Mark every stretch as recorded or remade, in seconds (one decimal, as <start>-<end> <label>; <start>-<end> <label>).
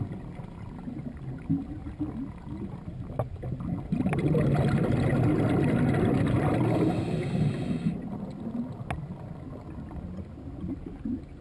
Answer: 0.0-5.1 recorded; 5.1-6.8 remade; 6.8-11.4 recorded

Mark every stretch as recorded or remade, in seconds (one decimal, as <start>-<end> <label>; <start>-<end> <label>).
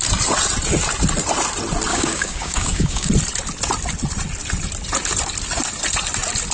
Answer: 0.0-1.9 recorded; 1.9-3.1 remade; 3.1-6.5 recorded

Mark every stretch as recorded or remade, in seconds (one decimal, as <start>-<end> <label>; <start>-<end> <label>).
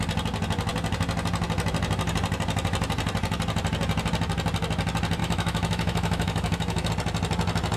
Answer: 0.0-5.2 recorded; 5.2-6.9 remade; 6.9-7.8 recorded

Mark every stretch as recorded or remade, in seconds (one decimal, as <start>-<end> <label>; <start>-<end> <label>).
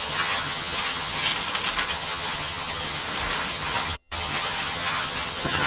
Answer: 0.0-1.3 remade; 1.3-1.9 recorded; 1.9-3.0 remade; 3.0-3.5 recorded; 3.5-5.7 remade